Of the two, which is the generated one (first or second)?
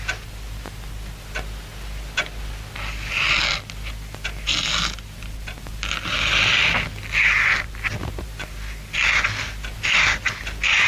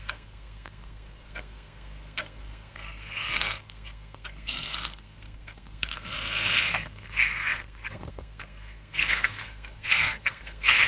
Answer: second